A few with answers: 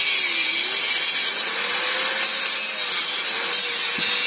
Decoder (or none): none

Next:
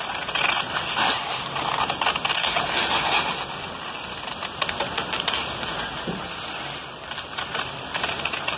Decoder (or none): none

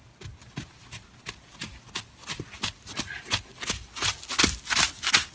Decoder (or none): none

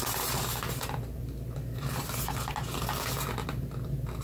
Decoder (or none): none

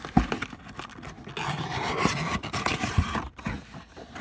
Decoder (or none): none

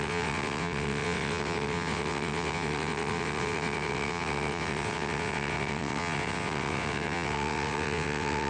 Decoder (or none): vocoder, WaveNeXt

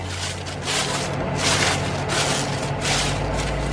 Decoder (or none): none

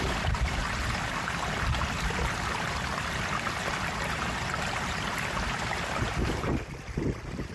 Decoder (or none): none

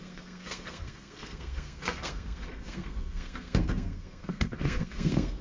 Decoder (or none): codec, SNAC